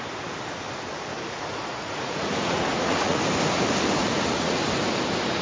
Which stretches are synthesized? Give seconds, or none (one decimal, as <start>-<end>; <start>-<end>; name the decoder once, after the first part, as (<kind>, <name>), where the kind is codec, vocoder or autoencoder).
1.1-3.2 (vocoder, Vocos); 4.0-4.6